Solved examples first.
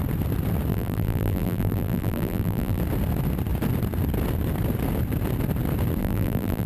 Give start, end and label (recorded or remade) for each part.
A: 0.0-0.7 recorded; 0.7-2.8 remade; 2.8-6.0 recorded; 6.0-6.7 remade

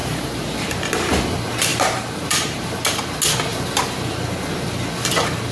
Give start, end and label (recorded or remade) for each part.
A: 0.0-0.9 remade; 0.9-1.7 recorded; 1.7-2.8 remade; 2.8-3.5 recorded; 3.5-4.1 remade; 4.1-5.5 recorded

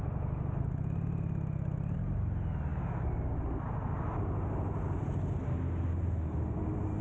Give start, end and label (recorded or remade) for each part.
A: 0.0-7.0 recorded

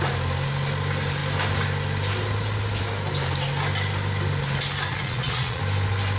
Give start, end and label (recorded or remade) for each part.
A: 0.0-4.9 recorded; 4.9-5.6 remade; 5.6-6.2 recorded

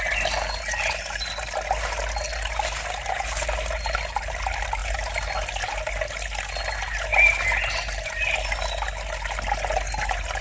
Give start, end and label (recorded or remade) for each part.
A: 0.0-10.4 recorded

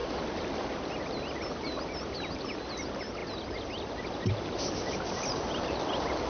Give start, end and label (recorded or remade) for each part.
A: 0.0-6.3 recorded

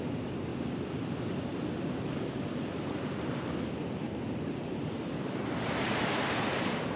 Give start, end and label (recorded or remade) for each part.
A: 0.0-0.5 recorded; 0.5-4.7 remade; 4.7-7.0 recorded